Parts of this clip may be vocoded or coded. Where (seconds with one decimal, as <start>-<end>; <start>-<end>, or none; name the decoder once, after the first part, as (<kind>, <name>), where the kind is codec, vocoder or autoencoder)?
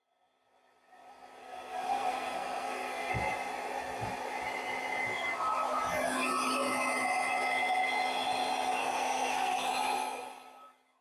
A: 1.4-3.1 (codec, SNAC); 8.8-9.7